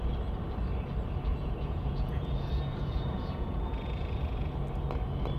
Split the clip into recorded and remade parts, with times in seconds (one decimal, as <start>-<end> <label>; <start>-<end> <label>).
0.0-1.3 recorded; 1.3-4.5 remade; 4.5-5.4 recorded